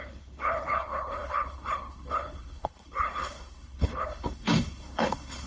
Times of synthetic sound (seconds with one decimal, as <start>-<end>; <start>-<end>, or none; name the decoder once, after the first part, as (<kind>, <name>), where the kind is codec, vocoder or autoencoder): 0.0-5.5 (codec, HILCodec)